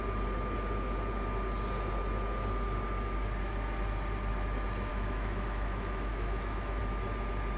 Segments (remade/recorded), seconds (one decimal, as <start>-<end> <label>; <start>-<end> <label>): 0.0-4.9 recorded; 4.9-6.8 remade; 6.8-7.6 recorded